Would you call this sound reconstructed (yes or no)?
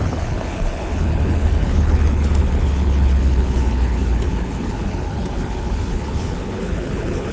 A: yes